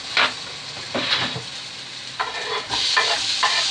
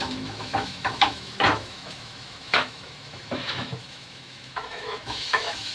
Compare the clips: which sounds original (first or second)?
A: first